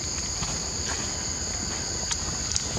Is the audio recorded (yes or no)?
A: yes